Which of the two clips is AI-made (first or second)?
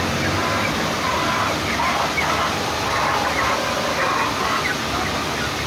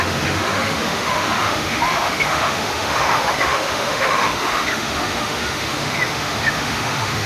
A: second